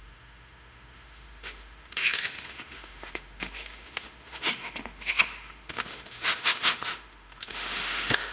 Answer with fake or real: fake